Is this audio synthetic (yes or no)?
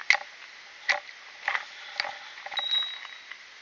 no